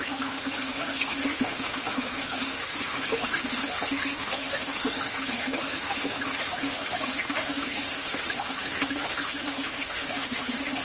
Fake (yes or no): yes